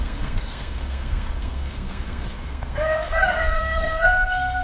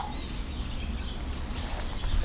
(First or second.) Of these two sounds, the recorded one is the second